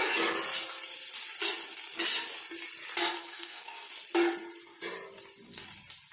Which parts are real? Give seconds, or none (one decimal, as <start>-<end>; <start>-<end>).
0.0-3.0; 3.9-6.1